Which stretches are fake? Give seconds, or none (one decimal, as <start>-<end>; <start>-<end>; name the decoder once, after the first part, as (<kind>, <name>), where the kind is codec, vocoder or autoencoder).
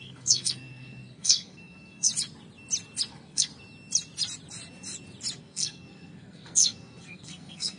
0.0-2.1 (codec, SNAC); 3.1-3.5; 5.4-7.8